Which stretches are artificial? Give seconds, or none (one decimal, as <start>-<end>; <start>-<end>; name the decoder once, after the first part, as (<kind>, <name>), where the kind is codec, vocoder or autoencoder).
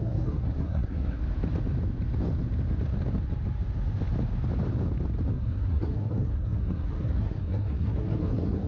0.0-1.2 (codec, SNAC); 5.3-8.7